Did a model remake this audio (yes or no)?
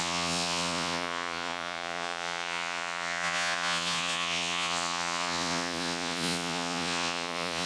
yes